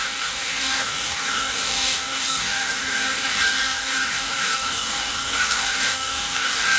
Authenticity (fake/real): fake